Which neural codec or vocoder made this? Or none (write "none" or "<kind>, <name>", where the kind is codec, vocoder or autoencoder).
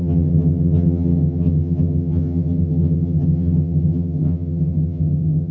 vocoder, HiFi-GAN